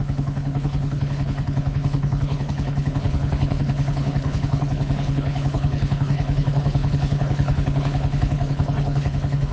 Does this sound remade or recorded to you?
remade